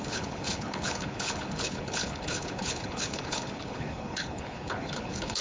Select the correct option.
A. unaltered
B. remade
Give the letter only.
B